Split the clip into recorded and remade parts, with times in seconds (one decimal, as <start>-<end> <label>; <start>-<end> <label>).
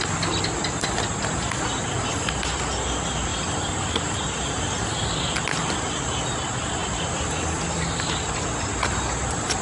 0.0-9.6 recorded